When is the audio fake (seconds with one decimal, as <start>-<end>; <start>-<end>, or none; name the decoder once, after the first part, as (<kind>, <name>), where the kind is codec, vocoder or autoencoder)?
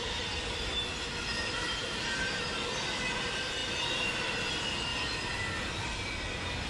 1.8-2.4 (vocoder, BigVGAN v2)